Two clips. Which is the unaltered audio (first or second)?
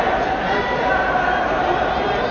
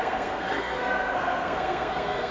first